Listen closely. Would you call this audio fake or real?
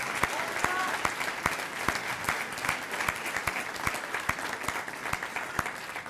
real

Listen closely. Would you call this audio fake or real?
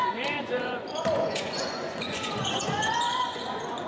fake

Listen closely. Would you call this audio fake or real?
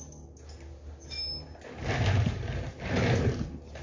real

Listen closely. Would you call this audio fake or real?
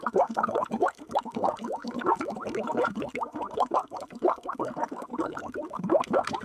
fake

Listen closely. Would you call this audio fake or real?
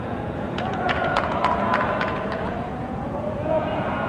fake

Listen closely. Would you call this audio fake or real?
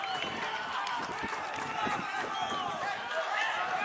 real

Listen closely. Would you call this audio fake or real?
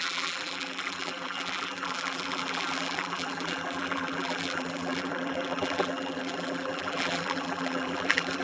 fake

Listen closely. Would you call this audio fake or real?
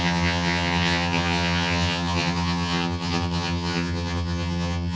fake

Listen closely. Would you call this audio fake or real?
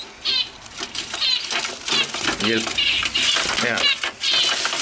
real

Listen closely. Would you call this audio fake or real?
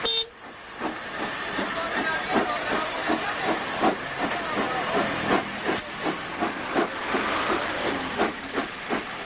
real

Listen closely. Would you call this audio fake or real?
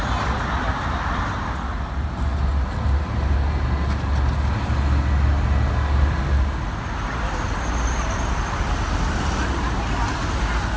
real